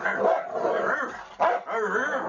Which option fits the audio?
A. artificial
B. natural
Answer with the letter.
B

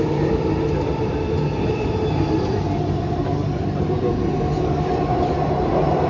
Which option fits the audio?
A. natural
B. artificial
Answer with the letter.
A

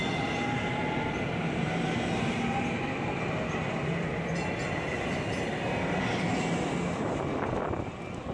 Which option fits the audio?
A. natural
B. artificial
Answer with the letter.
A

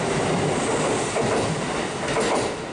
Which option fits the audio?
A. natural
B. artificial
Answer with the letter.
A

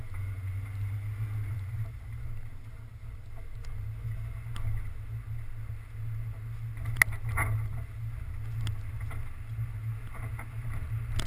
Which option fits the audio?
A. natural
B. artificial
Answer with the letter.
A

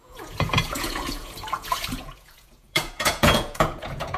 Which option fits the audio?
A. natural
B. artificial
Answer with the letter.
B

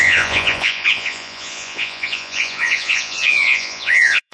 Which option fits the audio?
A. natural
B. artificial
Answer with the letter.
B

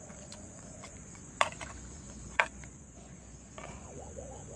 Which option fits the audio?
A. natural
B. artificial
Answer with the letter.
B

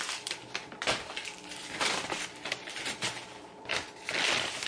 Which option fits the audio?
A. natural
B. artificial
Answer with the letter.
A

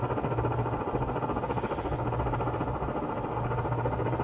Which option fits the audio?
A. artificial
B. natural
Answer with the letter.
B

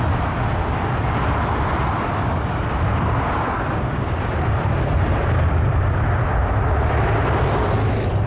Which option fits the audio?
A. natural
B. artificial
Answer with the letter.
A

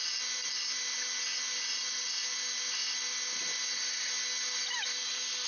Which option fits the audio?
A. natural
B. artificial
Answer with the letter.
A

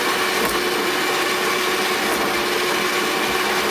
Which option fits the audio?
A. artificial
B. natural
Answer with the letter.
B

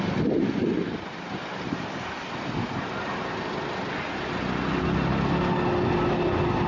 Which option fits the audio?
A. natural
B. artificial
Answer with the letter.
A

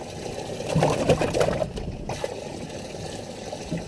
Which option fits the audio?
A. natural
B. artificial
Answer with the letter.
A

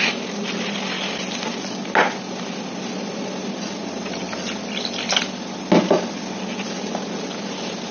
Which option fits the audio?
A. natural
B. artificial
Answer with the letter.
A